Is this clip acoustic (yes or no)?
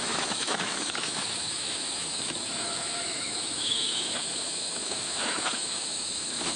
no